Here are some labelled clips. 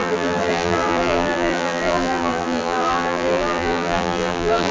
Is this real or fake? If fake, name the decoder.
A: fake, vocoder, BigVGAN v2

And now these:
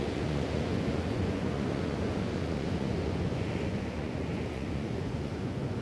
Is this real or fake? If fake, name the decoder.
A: fake, vocoder, Vocos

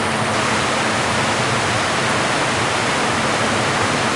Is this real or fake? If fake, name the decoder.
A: real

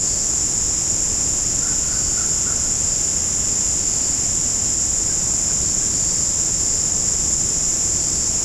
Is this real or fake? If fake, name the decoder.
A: real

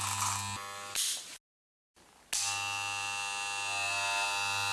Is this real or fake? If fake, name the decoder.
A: real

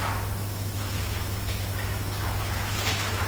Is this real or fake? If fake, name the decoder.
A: fake, autoencoder, DAC-VAE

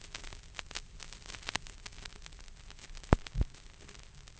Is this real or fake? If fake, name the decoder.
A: real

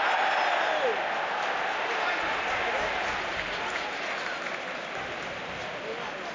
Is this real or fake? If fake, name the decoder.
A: real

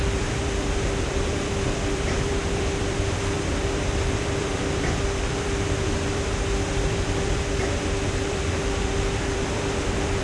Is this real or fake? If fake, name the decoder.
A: fake, vocoder, BigVGAN v2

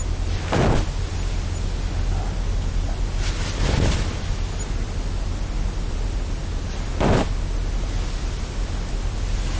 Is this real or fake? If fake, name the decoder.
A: real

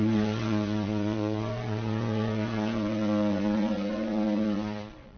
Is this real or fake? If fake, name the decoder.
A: fake, vocoder, Vocos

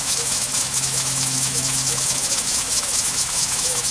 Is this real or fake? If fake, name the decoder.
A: fake, autoencoder, DAC-VAE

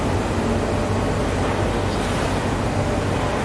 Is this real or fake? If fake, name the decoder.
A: real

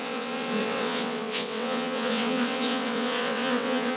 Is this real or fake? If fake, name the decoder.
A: fake, vocoder, WaveNeXt